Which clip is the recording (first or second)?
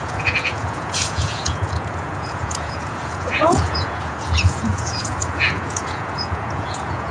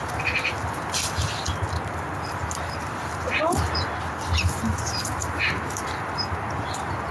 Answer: second